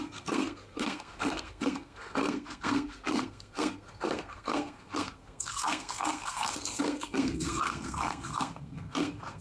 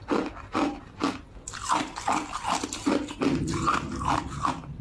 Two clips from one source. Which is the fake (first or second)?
first